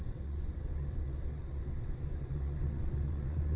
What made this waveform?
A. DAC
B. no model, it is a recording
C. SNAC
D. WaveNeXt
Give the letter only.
D